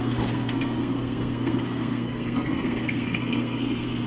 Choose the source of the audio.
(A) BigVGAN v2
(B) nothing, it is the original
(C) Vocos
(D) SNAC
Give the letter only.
D